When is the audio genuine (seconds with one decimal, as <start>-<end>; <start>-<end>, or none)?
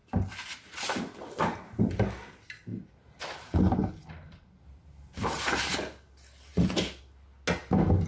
0.0-8.1